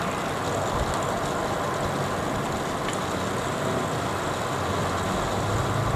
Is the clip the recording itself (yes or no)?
yes